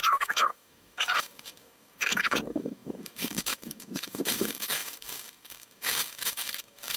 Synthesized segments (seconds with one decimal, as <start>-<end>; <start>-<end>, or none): 0.0-7.0